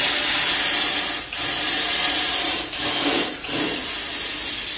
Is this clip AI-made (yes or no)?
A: no